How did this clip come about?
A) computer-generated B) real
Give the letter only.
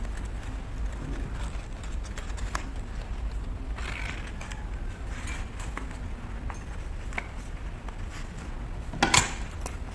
B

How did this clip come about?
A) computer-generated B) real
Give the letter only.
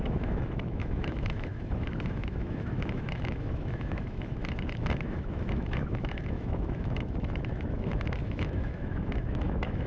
A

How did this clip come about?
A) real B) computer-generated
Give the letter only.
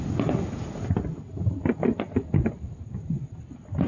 A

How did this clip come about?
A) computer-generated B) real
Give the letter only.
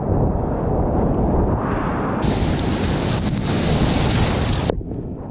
B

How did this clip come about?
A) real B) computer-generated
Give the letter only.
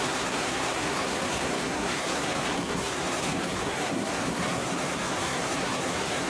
B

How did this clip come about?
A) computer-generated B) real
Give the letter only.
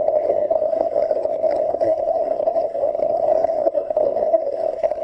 A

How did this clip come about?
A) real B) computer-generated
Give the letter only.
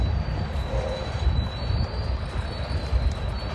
A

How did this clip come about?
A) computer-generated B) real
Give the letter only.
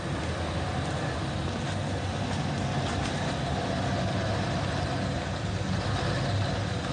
B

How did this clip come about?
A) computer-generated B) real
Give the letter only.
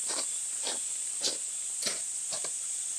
A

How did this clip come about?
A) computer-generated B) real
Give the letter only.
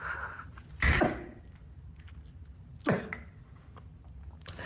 B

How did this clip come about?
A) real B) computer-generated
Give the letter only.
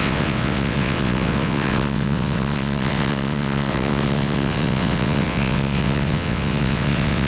B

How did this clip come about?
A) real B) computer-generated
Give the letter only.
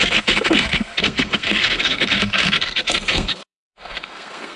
B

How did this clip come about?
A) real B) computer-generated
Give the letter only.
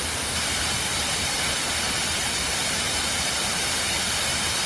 A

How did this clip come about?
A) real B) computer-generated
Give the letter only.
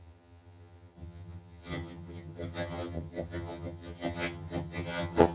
B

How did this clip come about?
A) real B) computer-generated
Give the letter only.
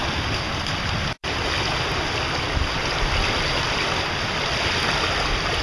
A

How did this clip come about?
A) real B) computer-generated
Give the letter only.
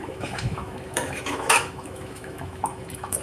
B